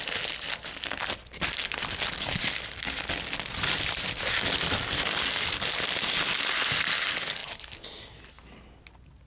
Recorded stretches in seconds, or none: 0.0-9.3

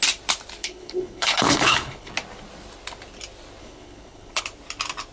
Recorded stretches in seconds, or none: 0.0-0.6; 2.1-3.6; 4.4-5.1

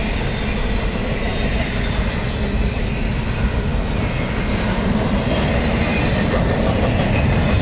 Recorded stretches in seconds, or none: none

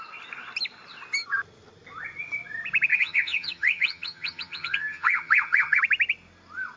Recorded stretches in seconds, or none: 0.0-2.9; 5.8-6.8

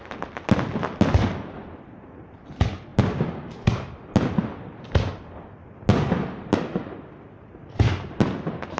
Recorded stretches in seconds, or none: 0.0-8.8

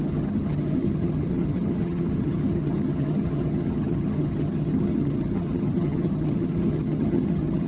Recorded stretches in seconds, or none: none